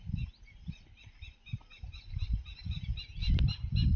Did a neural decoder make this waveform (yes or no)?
no